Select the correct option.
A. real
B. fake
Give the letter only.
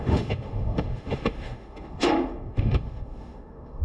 B